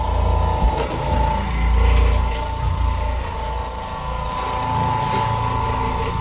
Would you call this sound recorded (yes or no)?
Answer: yes